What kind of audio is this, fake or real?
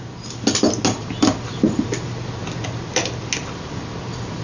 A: real